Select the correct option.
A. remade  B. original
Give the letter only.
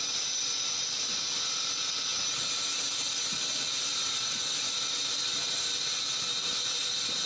B